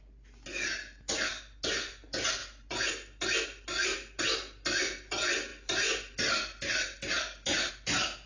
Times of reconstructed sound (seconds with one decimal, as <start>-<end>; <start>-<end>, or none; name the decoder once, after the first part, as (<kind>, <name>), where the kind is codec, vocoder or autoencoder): none

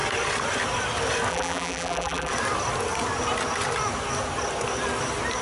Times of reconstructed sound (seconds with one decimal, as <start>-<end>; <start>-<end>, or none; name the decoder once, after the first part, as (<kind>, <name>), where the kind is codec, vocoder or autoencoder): 1.3-2.3 (vocoder, BigVGAN v2)

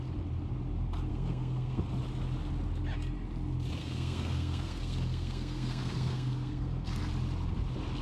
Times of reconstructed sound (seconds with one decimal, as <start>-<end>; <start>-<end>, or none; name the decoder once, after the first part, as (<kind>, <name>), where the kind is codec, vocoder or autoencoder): 1.1-1.8 (codec, SNAC); 3.8-7.0

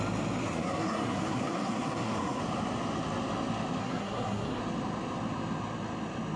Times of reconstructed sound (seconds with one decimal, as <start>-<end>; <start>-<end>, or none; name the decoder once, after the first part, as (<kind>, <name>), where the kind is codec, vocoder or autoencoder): 0.4-2.4 (codec, SNAC); 3.8-4.6

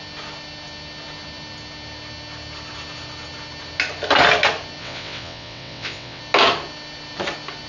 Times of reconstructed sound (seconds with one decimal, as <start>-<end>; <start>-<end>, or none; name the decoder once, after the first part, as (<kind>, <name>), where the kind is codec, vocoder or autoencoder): 4.8-6.2 (vocoder, WaveNeXt)

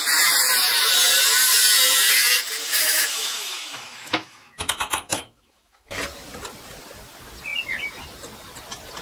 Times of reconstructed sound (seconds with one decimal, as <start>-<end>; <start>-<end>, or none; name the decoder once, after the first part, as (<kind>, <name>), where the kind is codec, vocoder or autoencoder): 2.6-6.0 (autoencoder, DAC-VAE)

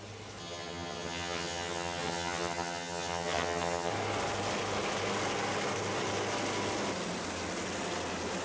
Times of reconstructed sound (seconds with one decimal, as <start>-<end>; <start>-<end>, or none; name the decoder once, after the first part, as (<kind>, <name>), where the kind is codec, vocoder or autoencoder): 0.4-3.9 (vocoder, HiFi-GAN)

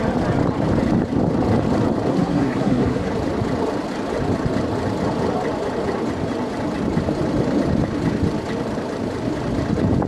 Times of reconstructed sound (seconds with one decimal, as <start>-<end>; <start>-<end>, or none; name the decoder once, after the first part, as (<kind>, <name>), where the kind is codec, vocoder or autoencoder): 2.1-3.1 (codec, SNAC)